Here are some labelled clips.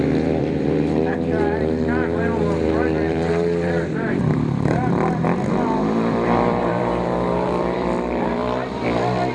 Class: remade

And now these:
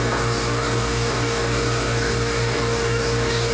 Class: remade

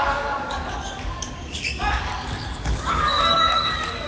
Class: remade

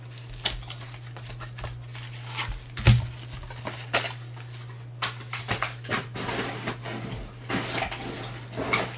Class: recorded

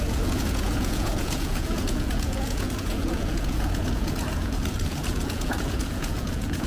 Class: remade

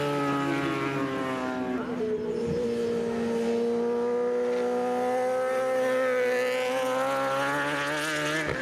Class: recorded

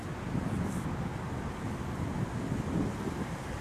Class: recorded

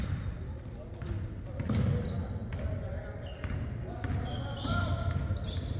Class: recorded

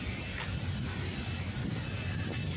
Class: recorded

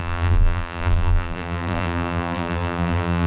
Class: remade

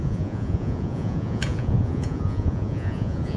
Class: remade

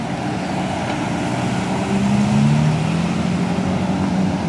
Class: recorded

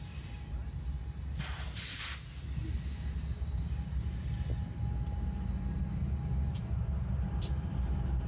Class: recorded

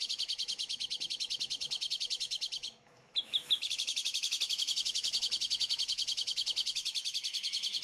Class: remade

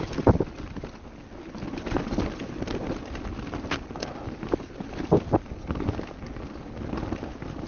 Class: recorded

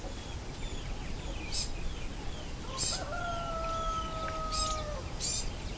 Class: recorded